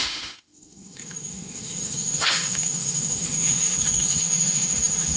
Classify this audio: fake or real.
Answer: fake